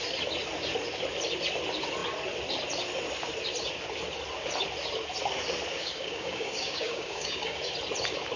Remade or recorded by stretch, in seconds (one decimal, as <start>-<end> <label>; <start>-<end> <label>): 0.0-5.7 recorded; 5.7-7.6 remade; 7.6-8.4 recorded